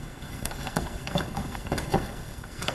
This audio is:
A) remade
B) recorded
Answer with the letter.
A